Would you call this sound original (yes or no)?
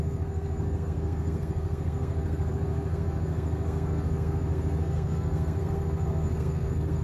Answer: no